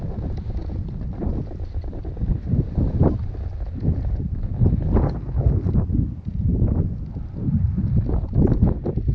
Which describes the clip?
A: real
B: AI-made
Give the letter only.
A